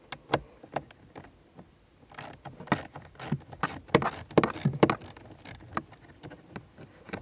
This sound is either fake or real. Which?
real